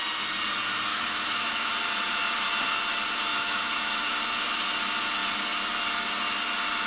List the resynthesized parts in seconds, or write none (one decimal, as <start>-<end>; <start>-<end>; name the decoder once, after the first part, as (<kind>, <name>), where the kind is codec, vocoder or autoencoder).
0.9-1.7 (autoencoder, DAC-VAE); 3.3-4.1